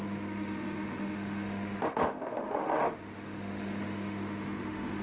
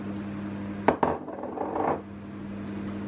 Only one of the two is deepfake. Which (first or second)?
first